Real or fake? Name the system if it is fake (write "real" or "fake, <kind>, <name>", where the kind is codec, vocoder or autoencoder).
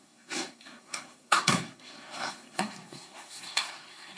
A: fake, codec, SNAC